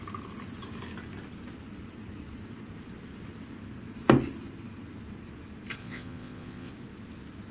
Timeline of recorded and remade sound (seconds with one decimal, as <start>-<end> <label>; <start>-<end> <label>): 0.0-5.8 recorded; 5.8-6.7 remade; 6.7-7.5 recorded